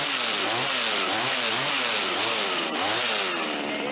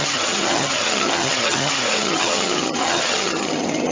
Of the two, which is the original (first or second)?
first